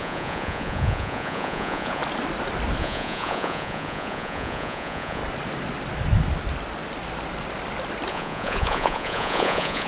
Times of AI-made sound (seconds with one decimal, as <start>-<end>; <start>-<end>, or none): 0.0-2.0; 2.8-5.2; 8.1-9.9